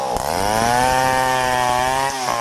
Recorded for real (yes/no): yes